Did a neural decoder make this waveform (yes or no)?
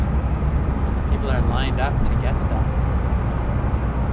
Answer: no